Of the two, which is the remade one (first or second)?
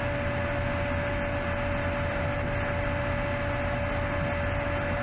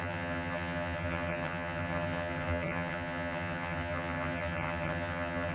second